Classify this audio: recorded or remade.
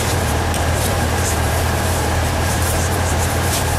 remade